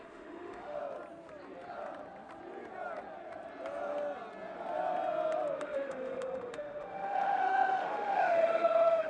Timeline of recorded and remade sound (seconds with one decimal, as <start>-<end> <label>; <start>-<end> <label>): 0.0-0.8 remade; 0.8-5.6 recorded; 5.6-9.1 remade